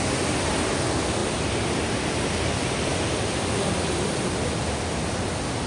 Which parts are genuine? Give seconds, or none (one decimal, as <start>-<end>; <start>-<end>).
0.0-1.2; 4.6-5.7

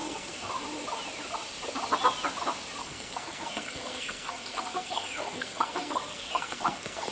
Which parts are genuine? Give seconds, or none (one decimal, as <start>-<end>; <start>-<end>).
0.5-2.8

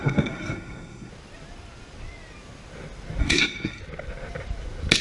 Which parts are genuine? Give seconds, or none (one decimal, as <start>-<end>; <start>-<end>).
1.1-3.2; 3.8-5.0

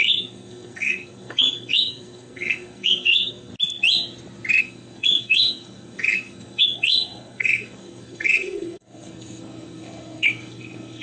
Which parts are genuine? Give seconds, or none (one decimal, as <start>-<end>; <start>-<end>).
3.5-4.6

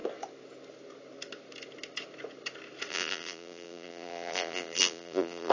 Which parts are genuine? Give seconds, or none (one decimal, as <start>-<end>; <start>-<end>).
0.0-2.9